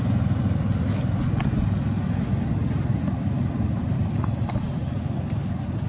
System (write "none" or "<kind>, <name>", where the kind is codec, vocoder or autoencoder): none